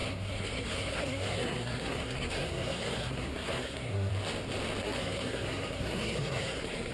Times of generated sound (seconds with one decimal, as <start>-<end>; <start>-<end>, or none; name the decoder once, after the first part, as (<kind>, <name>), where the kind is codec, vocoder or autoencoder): 0.0-4.1 (codec, SNAC); 4.8-6.9